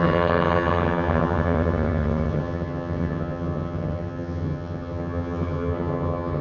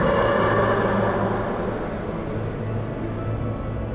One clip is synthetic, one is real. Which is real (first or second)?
second